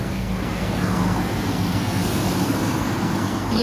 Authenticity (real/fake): fake